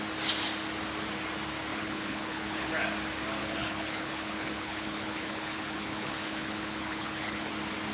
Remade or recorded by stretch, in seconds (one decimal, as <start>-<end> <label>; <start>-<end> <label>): 0.0-1.7 recorded; 1.7-2.7 remade; 2.7-3.4 recorded; 3.4-7.5 remade; 7.5-7.9 recorded